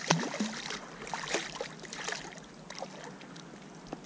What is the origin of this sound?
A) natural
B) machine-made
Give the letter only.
A